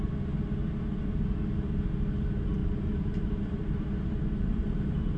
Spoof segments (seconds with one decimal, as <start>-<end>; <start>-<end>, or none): 0.6-1.3; 2.6-4.8